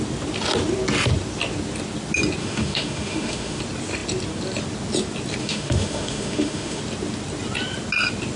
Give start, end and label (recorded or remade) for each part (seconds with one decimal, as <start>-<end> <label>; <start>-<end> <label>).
0.0-2.4 recorded; 2.4-3.6 remade; 3.6-5.4 recorded; 5.4-6.8 remade; 6.8-8.4 recorded